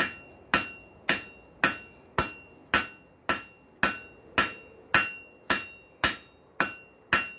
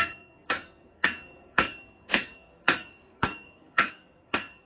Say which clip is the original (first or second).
first